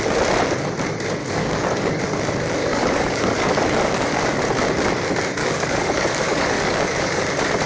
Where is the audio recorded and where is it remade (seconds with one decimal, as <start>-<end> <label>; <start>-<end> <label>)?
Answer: 0.0-1.2 recorded; 1.2-2.0 remade; 2.0-2.6 recorded; 2.6-4.4 remade; 4.4-5.4 recorded; 5.4-7.2 remade; 7.2-7.7 recorded